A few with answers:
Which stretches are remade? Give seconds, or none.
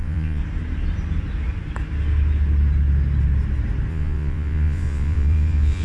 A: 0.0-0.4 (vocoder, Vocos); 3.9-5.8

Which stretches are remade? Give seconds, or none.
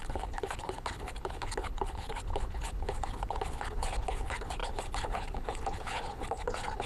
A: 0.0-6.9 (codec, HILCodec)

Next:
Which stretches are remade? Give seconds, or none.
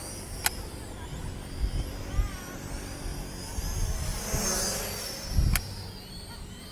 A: 0.0-1.1 (vocoder, BigVGAN v2); 1.8-3.1; 3.6-4.1; 6.3-6.7